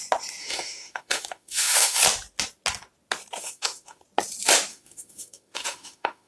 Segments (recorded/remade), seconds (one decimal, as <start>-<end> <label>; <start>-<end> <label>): 0.0-0.4 recorded; 0.4-2.0 remade; 2.0-3.4 recorded; 3.4-4.0 remade; 4.0-4.7 recorded; 4.7-6.3 remade

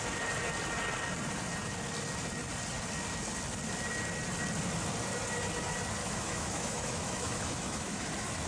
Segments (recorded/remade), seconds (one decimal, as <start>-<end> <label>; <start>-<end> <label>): 0.0-6.0 recorded; 6.0-8.1 remade; 8.1-8.5 recorded